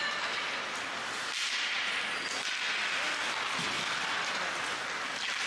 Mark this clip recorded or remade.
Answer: recorded